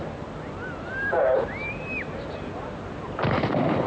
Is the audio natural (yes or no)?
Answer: yes